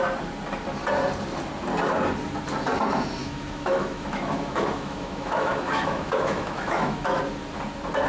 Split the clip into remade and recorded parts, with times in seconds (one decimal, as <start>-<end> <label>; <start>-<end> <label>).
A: 0.0-3.2 recorded; 3.2-7.2 remade; 7.2-8.1 recorded